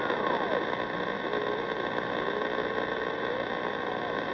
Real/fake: real